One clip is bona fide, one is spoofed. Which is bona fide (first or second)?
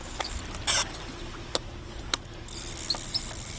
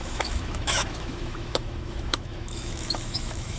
first